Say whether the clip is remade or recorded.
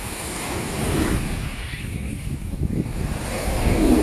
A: remade